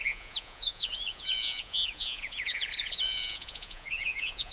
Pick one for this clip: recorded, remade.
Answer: remade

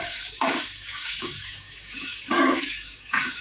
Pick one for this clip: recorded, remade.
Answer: remade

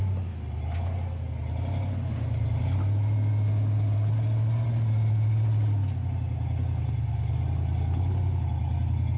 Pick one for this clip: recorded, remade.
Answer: recorded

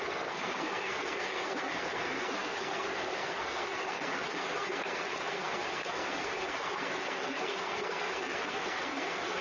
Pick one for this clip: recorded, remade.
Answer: remade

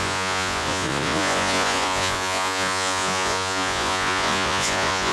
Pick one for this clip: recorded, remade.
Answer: remade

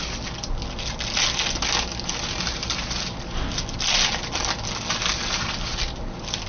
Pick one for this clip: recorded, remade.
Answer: recorded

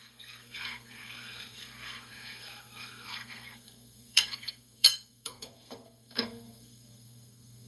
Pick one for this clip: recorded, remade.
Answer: remade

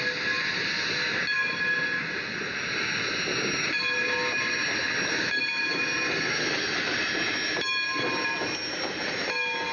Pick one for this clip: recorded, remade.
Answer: recorded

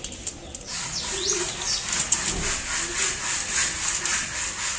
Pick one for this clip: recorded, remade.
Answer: recorded